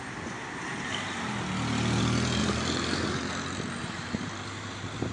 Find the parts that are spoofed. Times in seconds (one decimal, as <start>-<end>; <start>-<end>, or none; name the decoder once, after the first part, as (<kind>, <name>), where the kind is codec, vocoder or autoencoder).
2.4-3.3 (vocoder, BigVGAN v2); 3.8-5.1